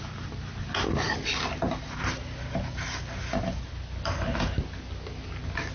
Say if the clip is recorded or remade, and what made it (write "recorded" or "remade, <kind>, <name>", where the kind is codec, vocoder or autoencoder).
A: recorded